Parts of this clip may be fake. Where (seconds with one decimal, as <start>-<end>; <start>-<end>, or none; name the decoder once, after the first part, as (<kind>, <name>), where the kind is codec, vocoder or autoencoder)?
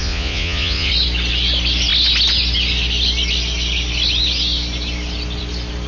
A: 0.0-0.9 (vocoder, Vocos)